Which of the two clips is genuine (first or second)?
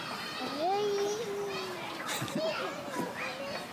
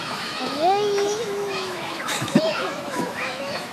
first